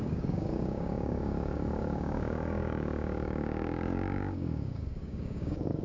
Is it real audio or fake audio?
fake